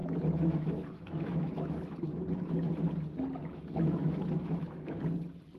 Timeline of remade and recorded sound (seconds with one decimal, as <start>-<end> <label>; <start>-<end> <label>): 0.0-2.7 remade; 2.7-3.4 recorded; 3.4-5.0 remade; 5.0-5.6 recorded